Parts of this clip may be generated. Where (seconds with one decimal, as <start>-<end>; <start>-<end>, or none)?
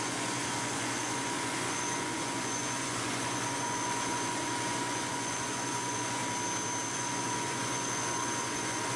0.0-6.2; 6.9-9.0